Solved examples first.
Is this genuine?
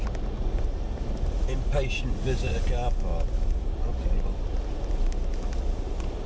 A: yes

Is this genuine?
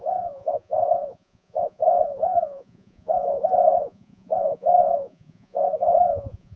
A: no